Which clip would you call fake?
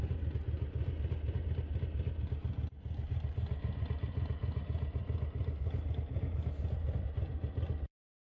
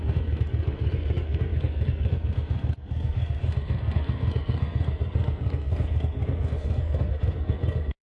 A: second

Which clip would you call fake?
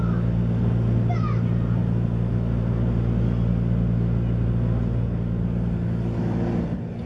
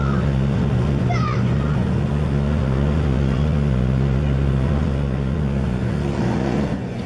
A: second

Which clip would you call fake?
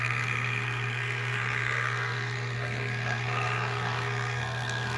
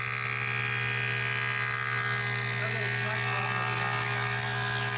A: first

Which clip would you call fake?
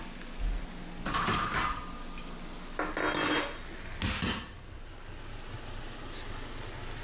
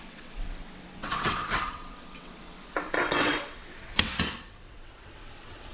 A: second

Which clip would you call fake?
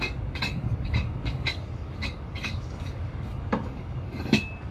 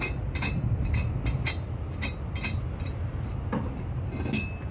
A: first